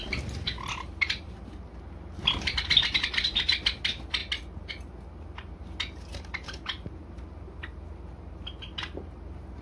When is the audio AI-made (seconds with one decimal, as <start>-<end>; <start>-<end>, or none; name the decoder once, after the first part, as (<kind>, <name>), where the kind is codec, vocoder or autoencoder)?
none